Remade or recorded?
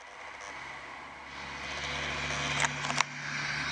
recorded